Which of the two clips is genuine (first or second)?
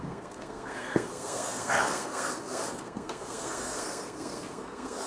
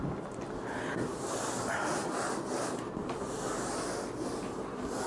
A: second